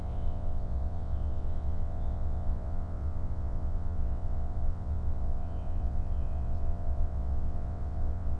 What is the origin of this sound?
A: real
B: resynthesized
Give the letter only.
B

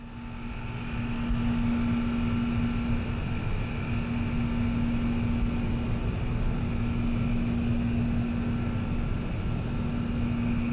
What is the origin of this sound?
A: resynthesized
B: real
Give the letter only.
B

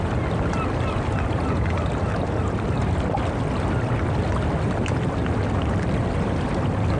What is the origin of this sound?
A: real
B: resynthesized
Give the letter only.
A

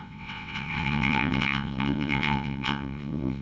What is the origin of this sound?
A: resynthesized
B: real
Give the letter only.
A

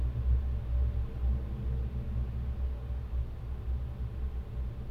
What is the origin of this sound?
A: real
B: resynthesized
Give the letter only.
A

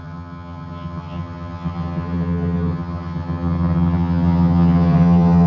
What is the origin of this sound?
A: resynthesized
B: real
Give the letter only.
A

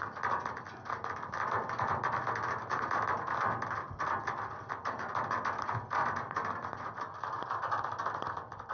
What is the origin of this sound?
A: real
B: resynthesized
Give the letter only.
A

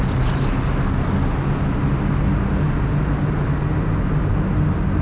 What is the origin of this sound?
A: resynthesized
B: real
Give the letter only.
B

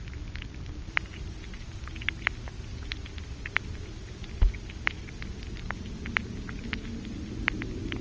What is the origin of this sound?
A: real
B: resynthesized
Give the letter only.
A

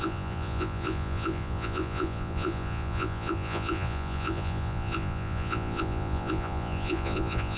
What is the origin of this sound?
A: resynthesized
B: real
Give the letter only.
A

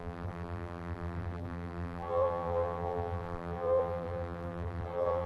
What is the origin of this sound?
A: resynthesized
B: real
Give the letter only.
A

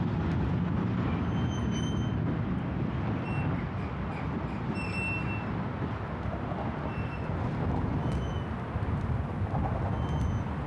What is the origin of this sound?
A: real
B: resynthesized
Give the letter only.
A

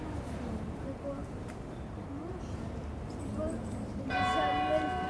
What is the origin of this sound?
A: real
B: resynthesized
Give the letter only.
B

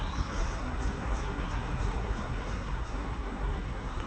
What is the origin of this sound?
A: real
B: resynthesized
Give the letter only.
B